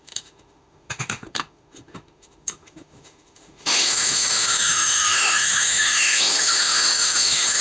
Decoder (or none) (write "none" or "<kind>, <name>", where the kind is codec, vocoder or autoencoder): autoencoder, DAC-VAE